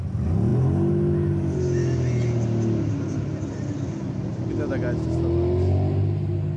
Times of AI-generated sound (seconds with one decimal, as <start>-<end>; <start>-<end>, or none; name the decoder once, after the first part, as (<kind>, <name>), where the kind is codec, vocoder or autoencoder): none